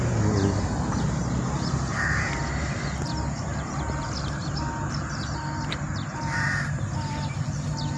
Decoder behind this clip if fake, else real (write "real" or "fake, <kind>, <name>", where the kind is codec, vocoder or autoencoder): real